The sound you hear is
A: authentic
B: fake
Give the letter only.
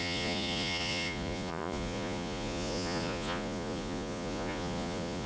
B